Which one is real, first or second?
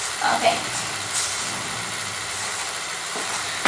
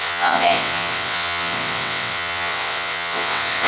first